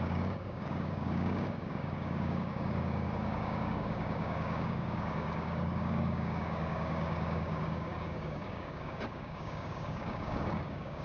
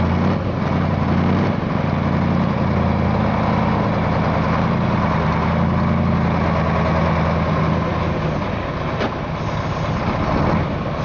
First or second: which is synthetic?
first